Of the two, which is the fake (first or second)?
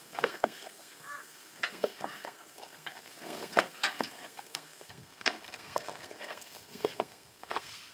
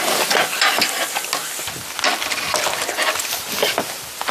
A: first